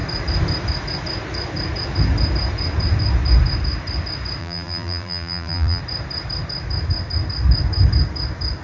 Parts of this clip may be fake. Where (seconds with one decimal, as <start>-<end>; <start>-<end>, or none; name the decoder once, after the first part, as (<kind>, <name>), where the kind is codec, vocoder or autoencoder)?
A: 4.4-5.8 (vocoder, BigVGAN v2)